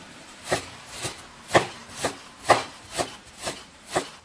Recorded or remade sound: remade